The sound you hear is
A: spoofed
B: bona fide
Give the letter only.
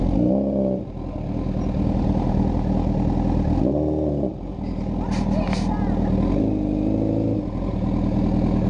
B